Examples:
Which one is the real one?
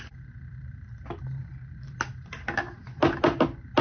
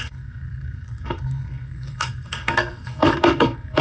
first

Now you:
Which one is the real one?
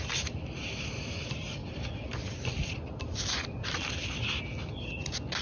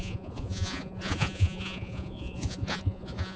first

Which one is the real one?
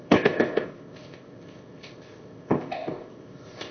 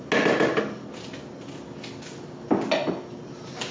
second